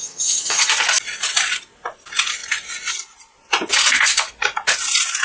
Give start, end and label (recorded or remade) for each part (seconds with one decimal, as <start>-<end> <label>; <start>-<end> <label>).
0.0-0.7 remade; 0.7-5.2 recorded